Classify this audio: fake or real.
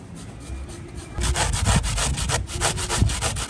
real